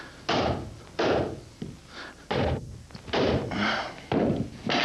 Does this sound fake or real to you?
real